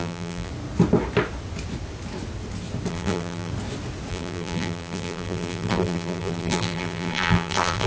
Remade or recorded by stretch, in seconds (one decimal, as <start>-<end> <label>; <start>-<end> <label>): 0.0-0.5 remade; 0.5-2.9 recorded; 2.9-3.5 remade; 3.5-4.1 recorded; 4.1-7.9 remade